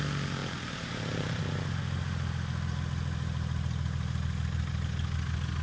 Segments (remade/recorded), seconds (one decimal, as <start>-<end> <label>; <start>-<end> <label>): 0.0-0.4 recorded; 0.4-1.4 remade; 1.4-5.6 recorded